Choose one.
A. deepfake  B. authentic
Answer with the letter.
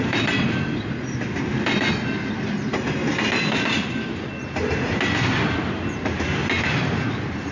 B